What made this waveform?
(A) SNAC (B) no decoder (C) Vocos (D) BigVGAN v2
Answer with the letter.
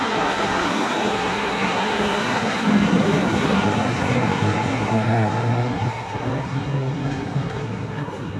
A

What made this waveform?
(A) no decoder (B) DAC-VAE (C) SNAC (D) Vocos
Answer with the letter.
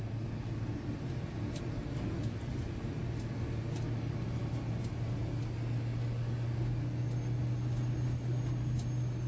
A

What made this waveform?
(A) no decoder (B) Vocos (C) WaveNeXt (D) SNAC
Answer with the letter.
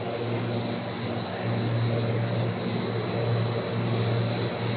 A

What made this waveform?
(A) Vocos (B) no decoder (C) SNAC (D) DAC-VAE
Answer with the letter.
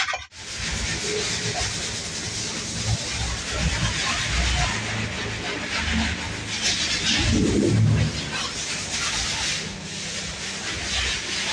B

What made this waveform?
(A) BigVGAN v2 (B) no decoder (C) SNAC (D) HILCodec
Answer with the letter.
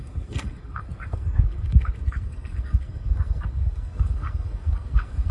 C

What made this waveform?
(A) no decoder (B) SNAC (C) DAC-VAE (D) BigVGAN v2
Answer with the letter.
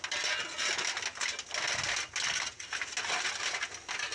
A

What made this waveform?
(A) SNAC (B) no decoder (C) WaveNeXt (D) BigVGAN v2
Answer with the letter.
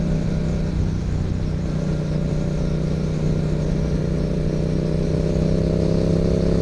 B